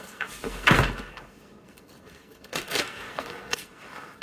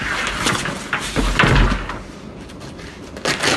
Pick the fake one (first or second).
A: first